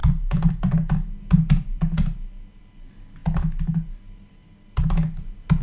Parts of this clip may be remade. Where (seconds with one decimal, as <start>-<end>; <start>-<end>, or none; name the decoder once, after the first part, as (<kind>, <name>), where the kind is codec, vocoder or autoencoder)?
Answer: none